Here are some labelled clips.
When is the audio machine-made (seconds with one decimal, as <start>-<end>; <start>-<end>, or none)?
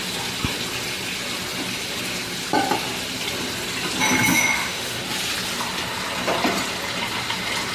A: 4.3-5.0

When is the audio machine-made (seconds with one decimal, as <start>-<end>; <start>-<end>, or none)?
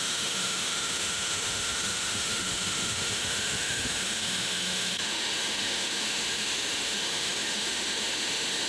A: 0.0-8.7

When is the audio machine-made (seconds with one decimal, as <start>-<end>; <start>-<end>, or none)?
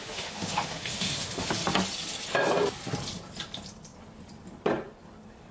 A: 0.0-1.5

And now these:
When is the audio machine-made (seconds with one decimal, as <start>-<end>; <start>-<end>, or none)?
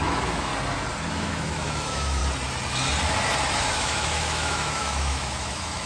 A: 0.0-0.5; 1.1-2.2; 3.7-5.9